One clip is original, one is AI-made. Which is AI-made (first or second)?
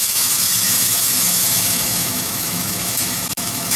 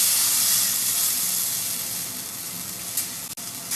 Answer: first